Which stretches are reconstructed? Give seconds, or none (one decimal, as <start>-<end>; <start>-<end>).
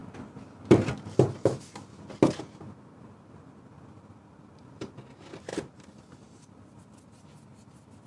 none